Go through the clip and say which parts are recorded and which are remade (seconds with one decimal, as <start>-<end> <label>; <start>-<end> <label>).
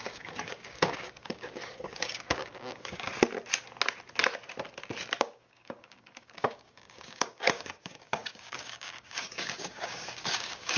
0.0-3.1 remade; 3.1-5.2 recorded; 5.2-10.8 remade